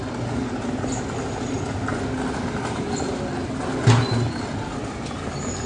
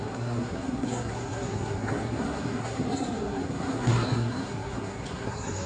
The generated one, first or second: second